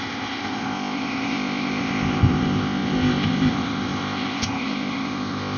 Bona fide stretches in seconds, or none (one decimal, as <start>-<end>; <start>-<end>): none

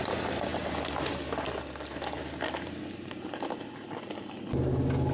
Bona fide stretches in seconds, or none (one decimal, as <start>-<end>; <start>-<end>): 0.0-5.1